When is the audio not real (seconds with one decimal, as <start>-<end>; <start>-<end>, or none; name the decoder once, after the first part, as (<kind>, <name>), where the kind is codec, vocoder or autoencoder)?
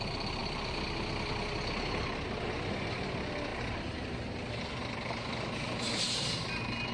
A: none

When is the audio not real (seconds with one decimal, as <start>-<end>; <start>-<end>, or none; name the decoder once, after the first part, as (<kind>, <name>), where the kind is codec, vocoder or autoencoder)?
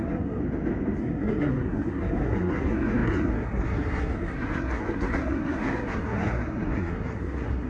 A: 0.0-0.4 (codec, SNAC); 1.0-7.7